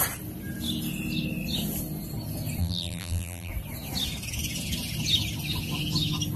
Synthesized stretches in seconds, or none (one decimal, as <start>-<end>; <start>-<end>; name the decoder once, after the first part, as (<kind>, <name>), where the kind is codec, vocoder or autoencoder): 2.6-3.5 (vocoder, BigVGAN v2)